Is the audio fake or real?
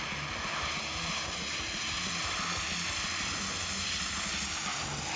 real